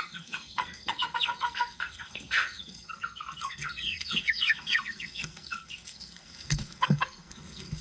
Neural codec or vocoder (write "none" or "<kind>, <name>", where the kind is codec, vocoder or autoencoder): codec, SNAC